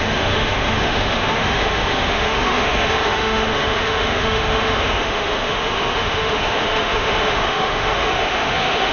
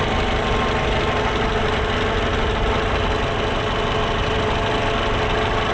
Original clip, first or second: second